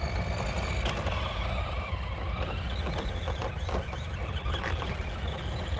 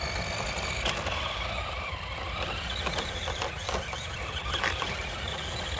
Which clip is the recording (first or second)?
first